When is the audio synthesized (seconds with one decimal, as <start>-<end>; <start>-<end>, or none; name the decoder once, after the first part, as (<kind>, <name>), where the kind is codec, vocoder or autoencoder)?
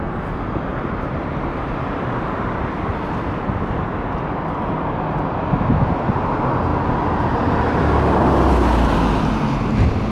0.7-3.8 (vocoder, BigVGAN v2)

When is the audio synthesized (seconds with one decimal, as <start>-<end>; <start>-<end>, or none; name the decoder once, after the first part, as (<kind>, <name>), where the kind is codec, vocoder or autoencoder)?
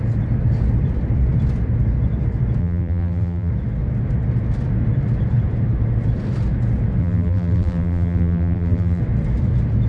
2.6-3.5 (vocoder, BigVGAN v2); 7.0-9.0